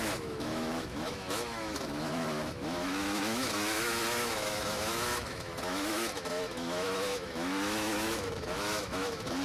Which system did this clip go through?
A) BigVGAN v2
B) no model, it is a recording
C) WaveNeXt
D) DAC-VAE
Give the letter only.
D